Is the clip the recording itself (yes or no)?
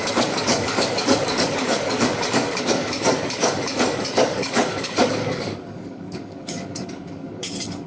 no